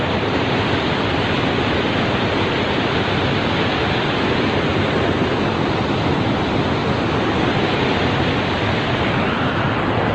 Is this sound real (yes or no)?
yes